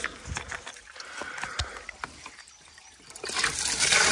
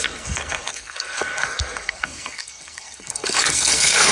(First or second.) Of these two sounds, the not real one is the second